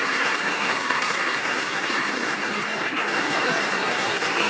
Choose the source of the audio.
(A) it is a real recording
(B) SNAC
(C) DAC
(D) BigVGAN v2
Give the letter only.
B